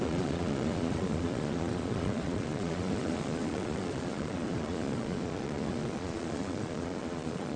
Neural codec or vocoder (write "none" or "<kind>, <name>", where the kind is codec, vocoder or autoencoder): vocoder, Vocos